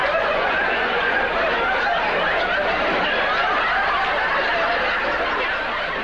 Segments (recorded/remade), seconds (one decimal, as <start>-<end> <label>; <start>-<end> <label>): 0.0-1.2 remade; 1.2-6.0 recorded